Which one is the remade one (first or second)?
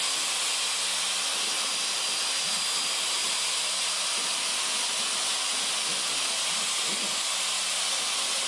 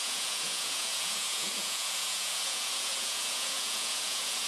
second